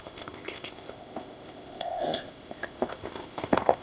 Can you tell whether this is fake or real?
fake